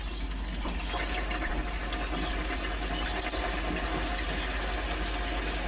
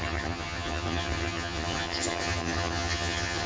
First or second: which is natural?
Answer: first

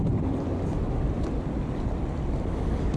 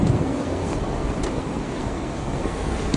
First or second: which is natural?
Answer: first